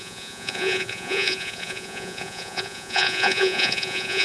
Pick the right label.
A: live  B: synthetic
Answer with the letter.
B